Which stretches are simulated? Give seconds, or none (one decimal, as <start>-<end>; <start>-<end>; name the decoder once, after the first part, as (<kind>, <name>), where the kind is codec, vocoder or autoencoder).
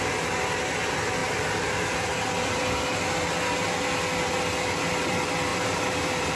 5.5-6.4 (vocoder, BigVGAN v2)